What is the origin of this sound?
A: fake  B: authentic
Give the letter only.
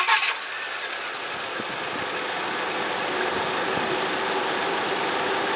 B